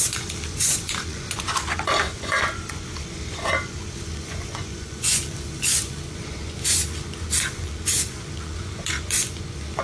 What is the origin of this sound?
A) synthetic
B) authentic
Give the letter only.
A